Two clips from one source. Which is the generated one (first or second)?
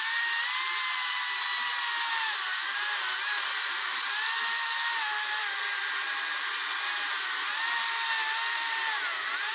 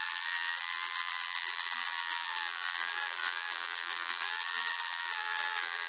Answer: second